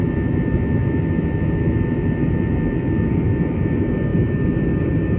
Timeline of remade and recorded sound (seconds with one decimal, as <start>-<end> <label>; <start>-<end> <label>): 0.0-5.2 recorded